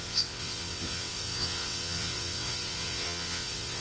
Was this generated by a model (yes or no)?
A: yes